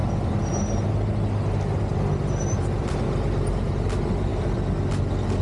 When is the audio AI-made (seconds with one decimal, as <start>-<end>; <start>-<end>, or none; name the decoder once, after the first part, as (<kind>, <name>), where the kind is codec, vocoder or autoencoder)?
none